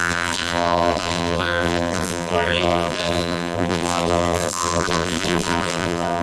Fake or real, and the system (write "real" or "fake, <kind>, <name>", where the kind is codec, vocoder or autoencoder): fake, vocoder, BigVGAN v2